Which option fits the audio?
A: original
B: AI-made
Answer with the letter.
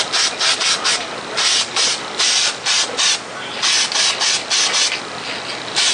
A